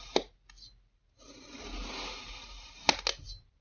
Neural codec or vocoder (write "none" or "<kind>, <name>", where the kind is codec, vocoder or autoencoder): none